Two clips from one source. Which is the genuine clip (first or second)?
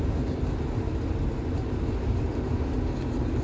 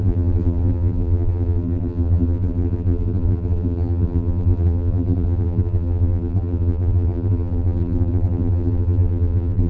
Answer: first